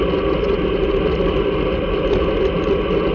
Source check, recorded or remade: recorded